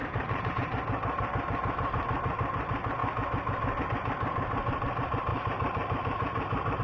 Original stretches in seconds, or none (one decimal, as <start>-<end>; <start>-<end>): 0.5-5.3